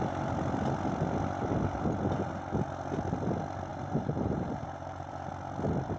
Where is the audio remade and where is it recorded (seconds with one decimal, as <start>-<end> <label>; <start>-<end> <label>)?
0.0-3.7 recorded; 3.7-5.3 remade; 5.3-6.0 recorded

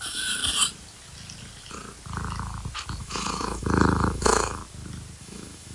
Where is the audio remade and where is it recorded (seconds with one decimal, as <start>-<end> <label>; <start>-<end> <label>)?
0.0-0.4 remade; 0.4-3.0 recorded; 3.0-4.6 remade; 4.6-5.2 recorded; 5.2-5.7 remade

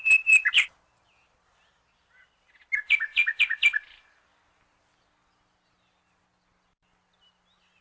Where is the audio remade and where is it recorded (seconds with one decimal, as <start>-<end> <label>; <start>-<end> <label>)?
0.0-7.8 recorded

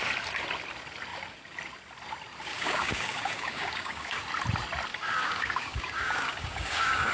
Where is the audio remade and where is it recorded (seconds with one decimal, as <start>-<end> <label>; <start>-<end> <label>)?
0.0-2.5 recorded; 2.5-4.2 remade; 4.2-4.9 recorded; 4.9-7.1 remade

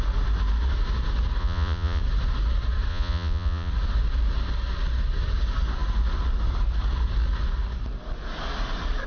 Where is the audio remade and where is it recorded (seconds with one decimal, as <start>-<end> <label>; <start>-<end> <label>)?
0.0-1.4 recorded; 1.4-2.0 remade; 2.0-2.9 recorded; 2.9-3.7 remade; 3.7-9.1 recorded

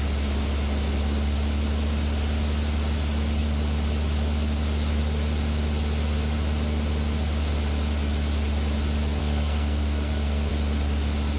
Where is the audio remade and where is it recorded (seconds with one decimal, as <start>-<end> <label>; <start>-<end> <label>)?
0.0-9.2 recorded; 9.2-10.5 remade; 10.5-11.4 recorded

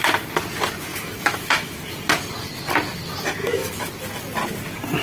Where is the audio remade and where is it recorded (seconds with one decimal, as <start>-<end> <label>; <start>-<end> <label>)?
0.0-0.9 recorded; 0.9-1.8 remade; 1.8-3.4 recorded; 3.4-3.9 remade; 3.9-5.0 recorded

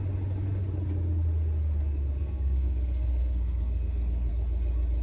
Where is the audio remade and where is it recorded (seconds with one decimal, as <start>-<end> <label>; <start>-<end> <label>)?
0.0-2.2 recorded; 2.2-4.3 remade; 4.3-5.0 recorded